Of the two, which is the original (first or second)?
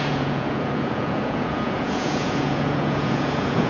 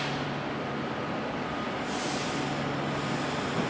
second